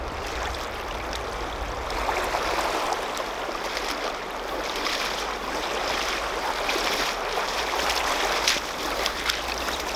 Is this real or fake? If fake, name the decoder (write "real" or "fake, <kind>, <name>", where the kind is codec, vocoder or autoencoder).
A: real